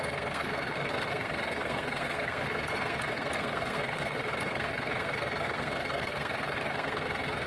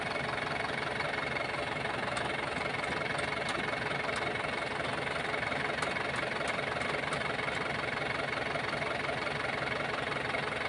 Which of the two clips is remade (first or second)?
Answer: first